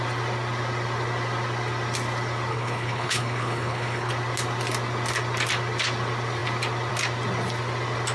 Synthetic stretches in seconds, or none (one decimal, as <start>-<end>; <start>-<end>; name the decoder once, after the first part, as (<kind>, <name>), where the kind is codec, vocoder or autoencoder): 2.5-4.1 (codec, HILCodec)